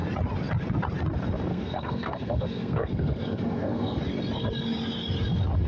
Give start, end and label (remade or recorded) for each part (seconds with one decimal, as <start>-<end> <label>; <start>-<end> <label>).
0.0-1.5 recorded; 1.5-4.0 remade; 4.0-5.7 recorded